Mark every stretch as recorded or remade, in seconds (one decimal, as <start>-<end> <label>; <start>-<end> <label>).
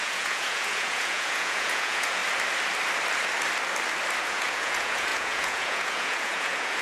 0.0-2.2 remade; 2.2-4.2 recorded; 4.2-6.8 remade